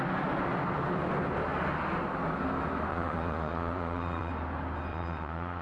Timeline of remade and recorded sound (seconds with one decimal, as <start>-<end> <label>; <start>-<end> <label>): 0.0-2.9 recorded; 2.9-4.3 remade; 4.3-4.9 recorded; 4.9-5.6 remade